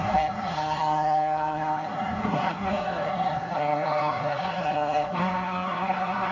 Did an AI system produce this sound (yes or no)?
yes